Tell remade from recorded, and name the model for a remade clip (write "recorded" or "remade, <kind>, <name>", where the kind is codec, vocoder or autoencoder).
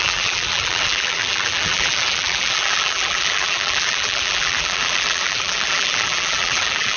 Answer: remade, vocoder, BigVGAN v2